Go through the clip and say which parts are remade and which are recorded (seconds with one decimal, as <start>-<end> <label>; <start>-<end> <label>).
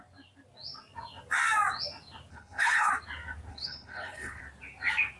0.0-2.3 recorded; 2.3-2.9 remade; 2.9-3.5 recorded; 3.5-4.4 remade; 4.4-5.2 recorded